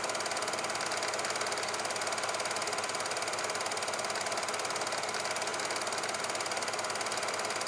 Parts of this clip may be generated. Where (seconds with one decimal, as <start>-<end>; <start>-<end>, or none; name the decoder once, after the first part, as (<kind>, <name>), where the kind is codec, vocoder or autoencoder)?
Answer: none